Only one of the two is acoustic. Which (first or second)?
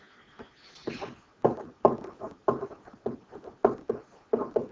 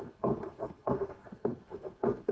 first